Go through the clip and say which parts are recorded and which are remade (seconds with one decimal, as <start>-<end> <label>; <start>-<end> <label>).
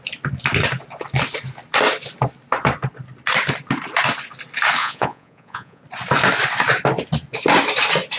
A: 0.0-4.8 recorded; 4.8-5.8 remade; 5.8-8.2 recorded